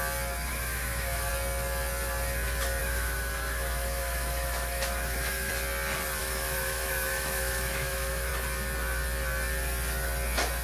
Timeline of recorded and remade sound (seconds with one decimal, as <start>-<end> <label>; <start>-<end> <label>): 0.0-0.5 recorded; 0.5-1.3 remade; 1.3-2.8 recorded; 2.8-5.5 remade; 5.5-6.2 recorded; 6.2-8.3 remade; 8.3-10.6 recorded